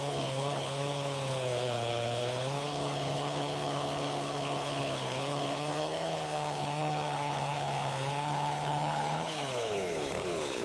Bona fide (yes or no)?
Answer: no